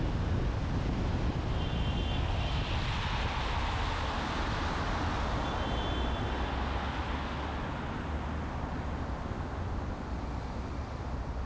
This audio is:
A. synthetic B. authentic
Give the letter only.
B